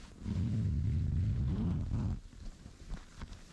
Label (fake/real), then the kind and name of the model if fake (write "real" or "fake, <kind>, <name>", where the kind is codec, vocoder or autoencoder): real